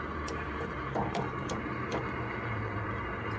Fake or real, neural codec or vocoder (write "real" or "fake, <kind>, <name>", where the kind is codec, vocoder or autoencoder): fake, vocoder, BigVGAN v2